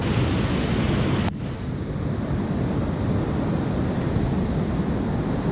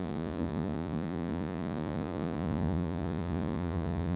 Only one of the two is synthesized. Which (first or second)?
second